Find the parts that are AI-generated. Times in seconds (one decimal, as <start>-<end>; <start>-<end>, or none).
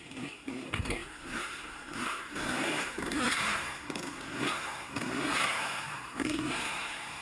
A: 0.0-7.2